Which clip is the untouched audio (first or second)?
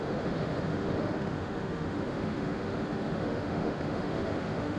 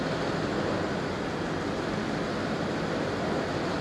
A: second